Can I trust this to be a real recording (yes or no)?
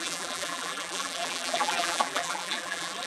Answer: no